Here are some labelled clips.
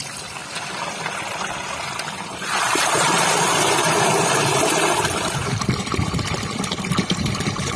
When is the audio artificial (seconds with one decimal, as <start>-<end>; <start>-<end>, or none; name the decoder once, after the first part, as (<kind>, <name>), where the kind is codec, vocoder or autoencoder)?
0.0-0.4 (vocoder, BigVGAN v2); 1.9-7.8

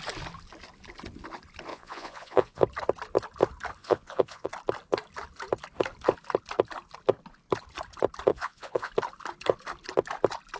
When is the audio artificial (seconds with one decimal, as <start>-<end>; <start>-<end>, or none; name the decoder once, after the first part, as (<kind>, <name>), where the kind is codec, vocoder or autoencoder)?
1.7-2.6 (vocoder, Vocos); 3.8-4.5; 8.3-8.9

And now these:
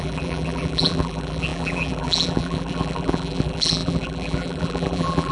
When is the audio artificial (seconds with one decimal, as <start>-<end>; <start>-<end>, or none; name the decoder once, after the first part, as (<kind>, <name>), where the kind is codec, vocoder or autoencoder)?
0.0-5.3 (vocoder, BigVGAN v2)